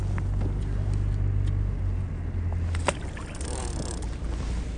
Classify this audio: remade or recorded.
recorded